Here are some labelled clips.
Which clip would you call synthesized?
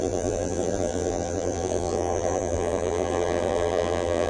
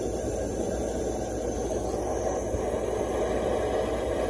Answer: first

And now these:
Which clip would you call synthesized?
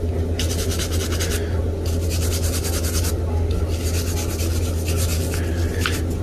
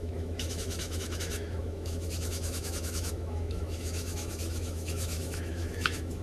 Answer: second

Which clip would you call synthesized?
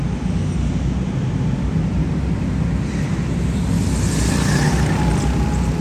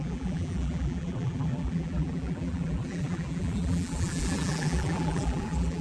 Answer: second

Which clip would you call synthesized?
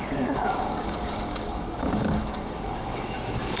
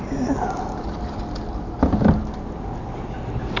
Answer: first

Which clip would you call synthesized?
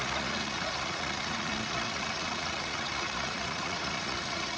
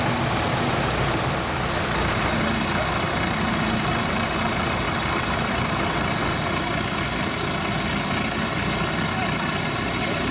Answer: first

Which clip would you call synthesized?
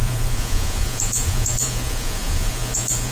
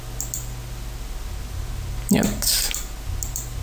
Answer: first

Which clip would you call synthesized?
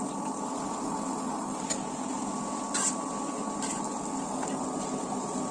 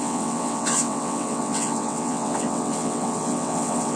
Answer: second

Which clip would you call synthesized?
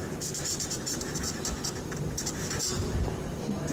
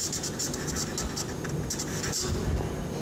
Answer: first